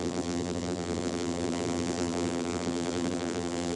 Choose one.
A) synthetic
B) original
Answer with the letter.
A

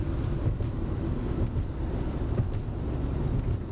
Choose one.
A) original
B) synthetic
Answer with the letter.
A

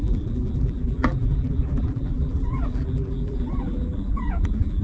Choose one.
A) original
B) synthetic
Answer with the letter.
B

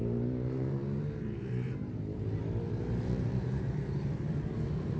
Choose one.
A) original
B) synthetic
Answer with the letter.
B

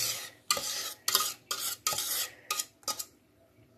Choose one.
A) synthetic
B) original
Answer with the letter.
B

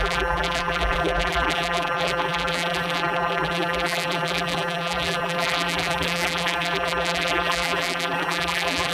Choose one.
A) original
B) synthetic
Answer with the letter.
B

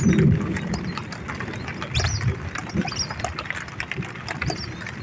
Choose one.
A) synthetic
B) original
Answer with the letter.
B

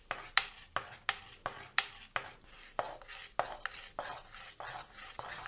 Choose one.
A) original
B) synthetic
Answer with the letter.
A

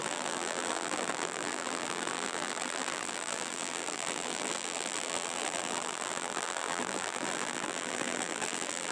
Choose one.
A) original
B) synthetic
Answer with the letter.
B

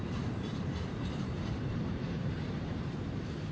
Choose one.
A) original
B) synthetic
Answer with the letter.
B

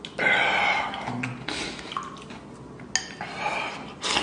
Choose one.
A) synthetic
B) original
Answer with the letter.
B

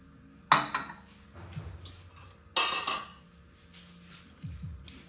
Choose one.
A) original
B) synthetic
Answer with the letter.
A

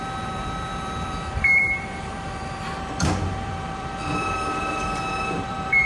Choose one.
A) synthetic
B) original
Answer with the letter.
A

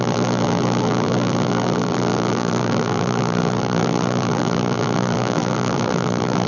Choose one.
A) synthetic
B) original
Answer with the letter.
A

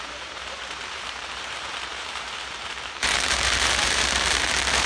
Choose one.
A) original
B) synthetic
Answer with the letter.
B